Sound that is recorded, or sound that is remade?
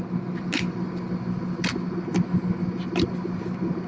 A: recorded